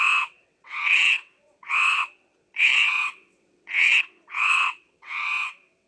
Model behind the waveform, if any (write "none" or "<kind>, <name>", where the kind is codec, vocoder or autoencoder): vocoder, WaveNeXt